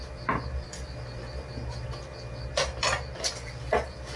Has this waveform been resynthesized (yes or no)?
no